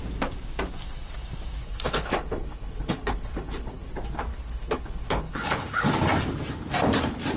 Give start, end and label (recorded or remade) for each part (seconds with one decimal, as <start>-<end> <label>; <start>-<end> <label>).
0.0-1.6 recorded; 1.6-3.9 remade; 3.9-4.3 recorded; 4.3-5.9 remade; 5.9-7.4 recorded